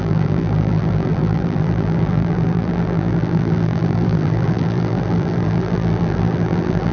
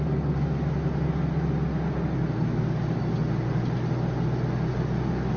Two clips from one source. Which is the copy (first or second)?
first